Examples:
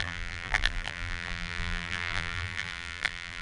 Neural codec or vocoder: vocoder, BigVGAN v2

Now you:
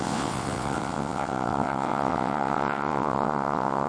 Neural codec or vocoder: vocoder, WaveNeXt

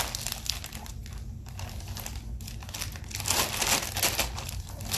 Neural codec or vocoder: none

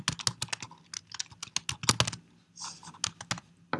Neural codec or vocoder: none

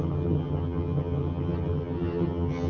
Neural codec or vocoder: vocoder, HiFi-GAN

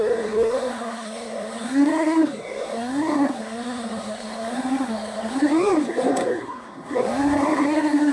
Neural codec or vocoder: codec, SNAC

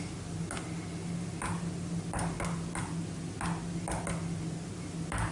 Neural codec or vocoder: none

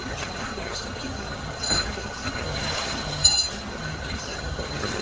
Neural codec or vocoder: vocoder, HiFi-GAN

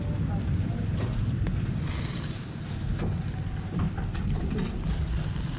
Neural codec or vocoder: none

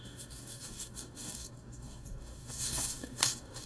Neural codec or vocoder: codec, DAC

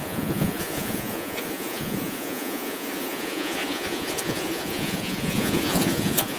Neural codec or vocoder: vocoder, Vocos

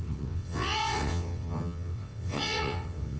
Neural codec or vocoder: vocoder, WaveNeXt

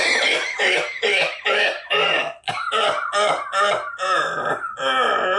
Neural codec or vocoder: none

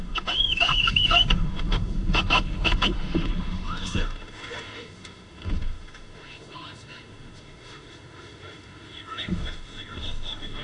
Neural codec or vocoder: autoencoder, DAC-VAE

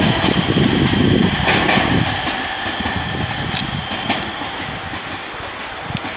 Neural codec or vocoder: none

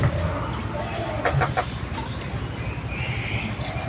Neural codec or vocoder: none